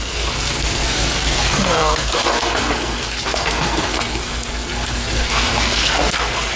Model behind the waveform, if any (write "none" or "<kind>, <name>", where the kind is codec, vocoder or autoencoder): codec, SNAC